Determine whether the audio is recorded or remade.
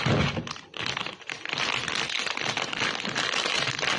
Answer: recorded